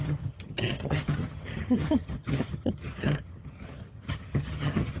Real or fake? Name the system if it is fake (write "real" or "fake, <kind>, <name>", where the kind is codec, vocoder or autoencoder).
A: fake, vocoder, HiFi-GAN